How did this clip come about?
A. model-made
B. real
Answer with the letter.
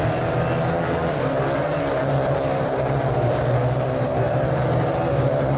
B